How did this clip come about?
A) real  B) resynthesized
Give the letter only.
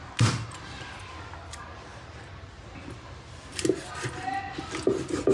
A